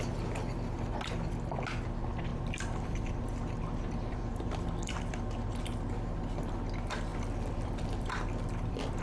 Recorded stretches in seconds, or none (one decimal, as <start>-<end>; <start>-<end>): 0.0-2.3; 5.6-7.1